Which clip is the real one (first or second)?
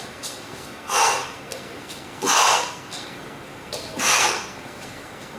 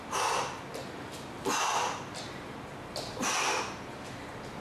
second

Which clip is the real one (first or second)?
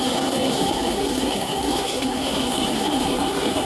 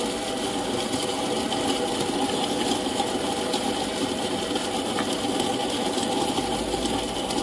second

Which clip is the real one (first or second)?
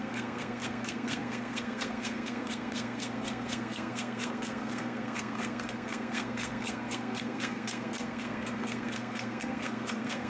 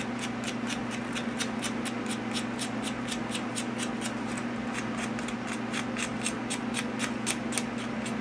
second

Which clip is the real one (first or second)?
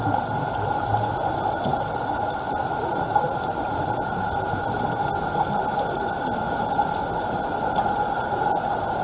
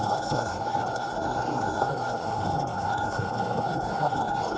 first